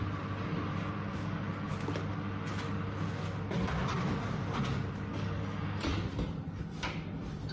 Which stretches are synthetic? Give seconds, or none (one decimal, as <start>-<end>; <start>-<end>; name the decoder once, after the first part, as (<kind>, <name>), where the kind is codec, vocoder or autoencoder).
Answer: 1.1-1.7 (codec, DAC); 5.1-5.9